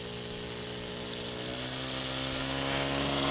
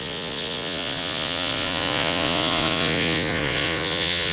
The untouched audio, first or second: first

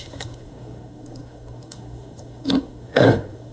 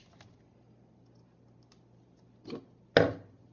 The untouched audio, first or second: second